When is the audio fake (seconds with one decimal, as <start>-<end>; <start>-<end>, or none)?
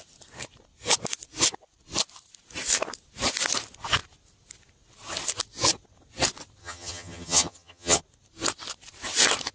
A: 6.6-8.0